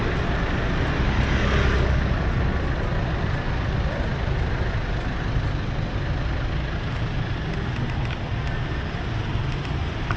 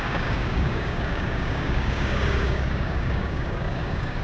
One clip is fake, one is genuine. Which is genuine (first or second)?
first